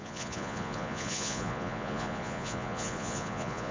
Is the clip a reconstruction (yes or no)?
yes